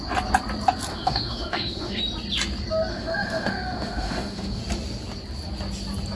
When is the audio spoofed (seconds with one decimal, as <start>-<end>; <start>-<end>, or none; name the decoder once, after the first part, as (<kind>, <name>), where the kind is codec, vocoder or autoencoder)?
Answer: 0.9-2.0 (autoencoder, DAC-VAE); 2.9-4.6